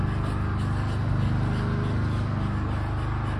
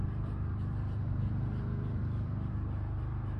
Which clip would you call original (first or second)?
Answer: first